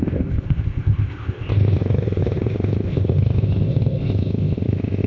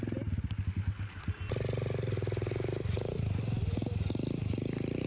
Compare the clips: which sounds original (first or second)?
second